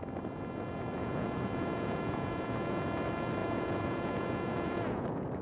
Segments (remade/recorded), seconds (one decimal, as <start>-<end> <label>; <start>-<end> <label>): 0.0-1.0 recorded; 1.0-2.8 remade; 2.8-3.4 recorded; 3.4-5.4 remade